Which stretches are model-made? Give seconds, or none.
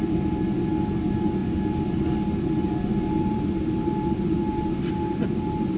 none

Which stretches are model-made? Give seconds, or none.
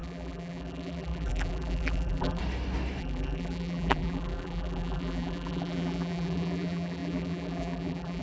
0.0-2.4 (vocoder, BigVGAN v2); 3.0-8.2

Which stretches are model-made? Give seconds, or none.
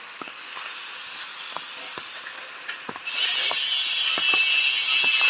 none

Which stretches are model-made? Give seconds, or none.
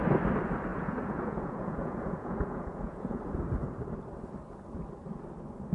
0.7-3.2 (vocoder, Vocos)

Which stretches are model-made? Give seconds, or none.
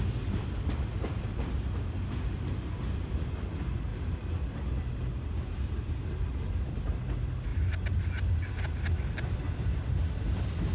none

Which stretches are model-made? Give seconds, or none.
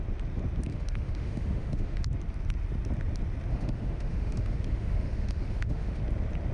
0.7-2.0 (autoencoder, DAC-VAE); 3.5-6.0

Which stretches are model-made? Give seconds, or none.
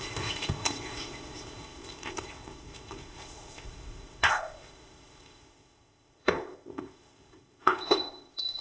0.0-8.6 (codec, ZipCodec)